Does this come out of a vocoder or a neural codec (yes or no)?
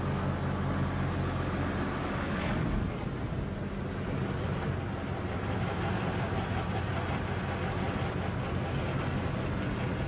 no